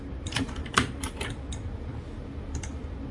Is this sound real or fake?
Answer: fake